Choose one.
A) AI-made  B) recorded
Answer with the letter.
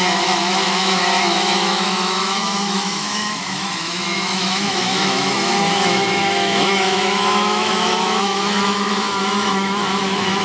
A